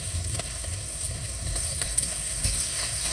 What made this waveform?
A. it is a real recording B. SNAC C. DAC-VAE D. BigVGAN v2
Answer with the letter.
B